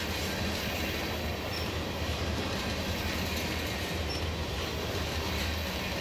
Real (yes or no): yes